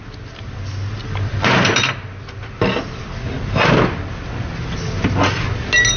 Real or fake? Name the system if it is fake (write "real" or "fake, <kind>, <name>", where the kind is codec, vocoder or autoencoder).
real